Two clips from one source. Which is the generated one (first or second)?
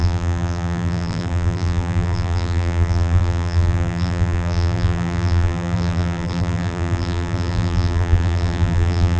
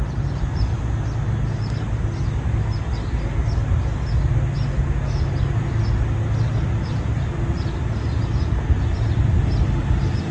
first